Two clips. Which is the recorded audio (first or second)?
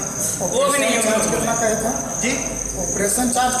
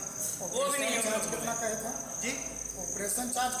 second